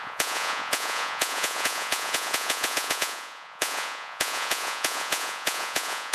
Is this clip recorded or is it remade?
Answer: remade